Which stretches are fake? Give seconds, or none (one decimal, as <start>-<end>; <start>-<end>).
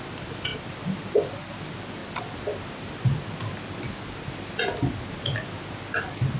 0.5-1.5